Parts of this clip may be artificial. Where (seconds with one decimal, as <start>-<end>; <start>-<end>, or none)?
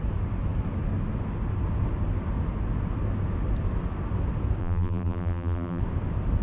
4.6-5.8